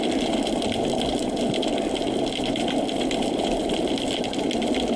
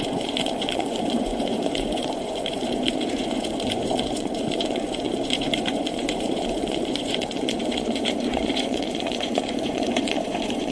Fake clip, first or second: second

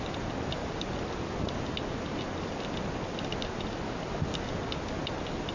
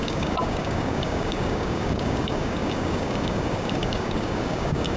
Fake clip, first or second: second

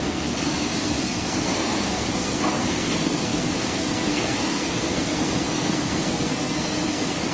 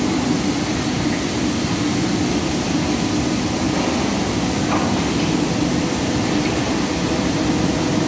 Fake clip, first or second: first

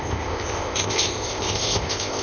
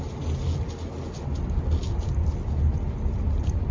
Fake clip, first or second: first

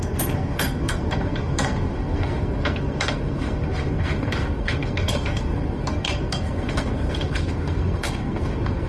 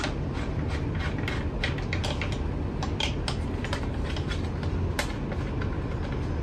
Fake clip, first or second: first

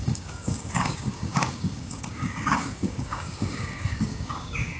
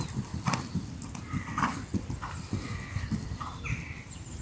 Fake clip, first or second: first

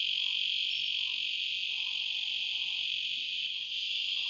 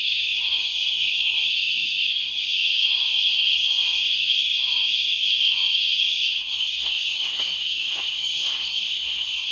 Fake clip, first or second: second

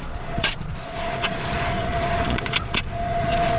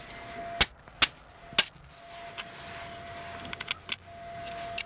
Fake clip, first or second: first